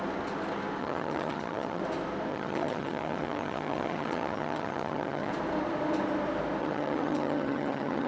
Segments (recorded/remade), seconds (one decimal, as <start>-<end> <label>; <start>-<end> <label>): 0.0-0.8 recorded; 0.8-1.8 remade; 1.8-2.3 recorded; 2.3-5.3 remade; 5.3-6.6 recorded; 6.6-8.1 remade